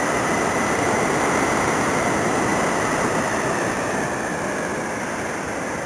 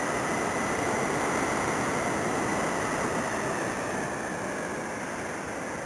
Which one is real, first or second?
second